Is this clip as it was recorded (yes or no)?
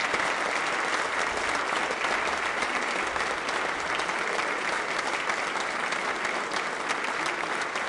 yes